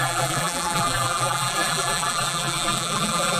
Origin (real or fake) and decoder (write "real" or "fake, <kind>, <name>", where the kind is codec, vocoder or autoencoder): fake, vocoder, BigVGAN v2